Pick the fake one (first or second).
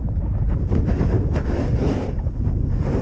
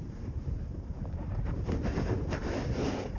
second